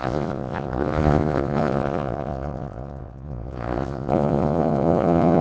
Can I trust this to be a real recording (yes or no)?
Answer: no